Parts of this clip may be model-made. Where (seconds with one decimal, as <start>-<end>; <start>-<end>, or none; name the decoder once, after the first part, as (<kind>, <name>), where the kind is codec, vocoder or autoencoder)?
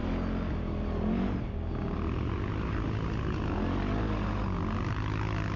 none